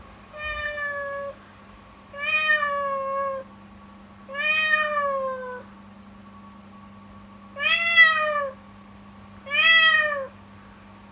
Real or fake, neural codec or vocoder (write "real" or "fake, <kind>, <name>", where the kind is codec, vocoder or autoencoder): real